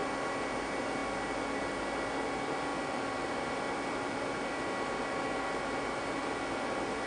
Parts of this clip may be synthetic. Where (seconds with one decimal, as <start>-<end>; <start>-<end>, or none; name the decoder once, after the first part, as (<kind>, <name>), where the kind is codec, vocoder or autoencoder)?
none